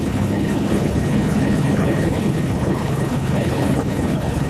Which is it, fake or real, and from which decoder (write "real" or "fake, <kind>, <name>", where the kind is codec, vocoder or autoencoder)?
fake, codec, HILCodec